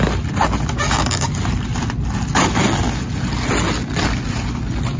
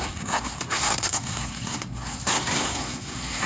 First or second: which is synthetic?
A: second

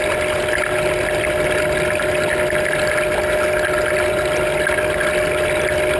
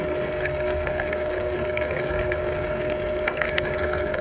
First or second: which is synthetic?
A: second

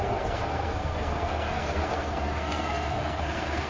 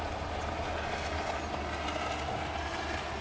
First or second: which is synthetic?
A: first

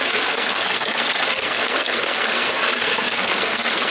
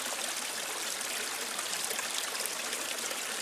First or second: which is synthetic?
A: first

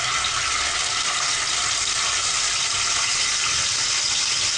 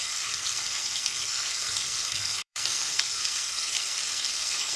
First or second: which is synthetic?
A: second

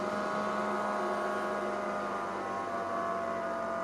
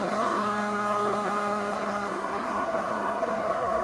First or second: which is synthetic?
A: second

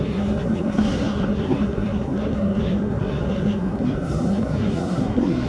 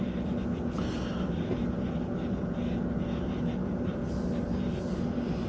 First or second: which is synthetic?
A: first